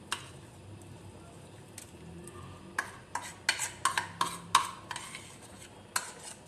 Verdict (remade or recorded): recorded